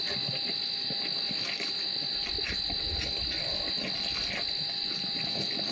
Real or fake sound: real